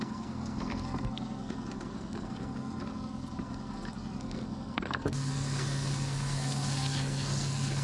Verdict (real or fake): fake